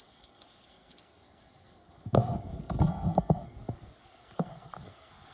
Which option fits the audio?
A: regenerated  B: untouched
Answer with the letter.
A